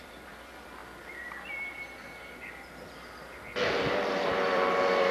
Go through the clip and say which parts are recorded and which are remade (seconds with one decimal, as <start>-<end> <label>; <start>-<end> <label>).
0.0-0.8 remade; 0.8-3.9 recorded; 3.9-5.1 remade